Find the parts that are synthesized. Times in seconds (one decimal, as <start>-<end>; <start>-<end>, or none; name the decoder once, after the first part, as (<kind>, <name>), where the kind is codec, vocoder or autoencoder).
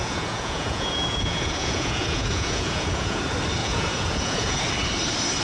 0.0-3.2 (vocoder, Vocos); 3.6-4.6